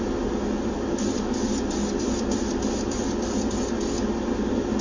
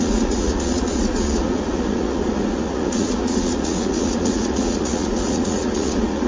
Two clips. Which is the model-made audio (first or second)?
second